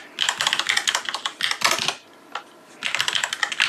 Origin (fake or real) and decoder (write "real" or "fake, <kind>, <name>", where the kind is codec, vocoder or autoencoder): real